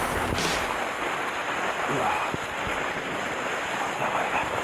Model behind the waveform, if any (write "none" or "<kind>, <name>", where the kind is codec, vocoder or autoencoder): none